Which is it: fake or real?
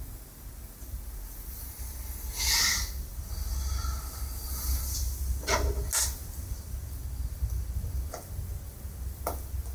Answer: real